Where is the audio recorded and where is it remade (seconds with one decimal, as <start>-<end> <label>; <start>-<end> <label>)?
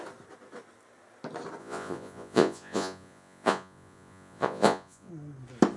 0.0-1.6 recorded; 1.6-5.1 remade; 5.1-5.8 recorded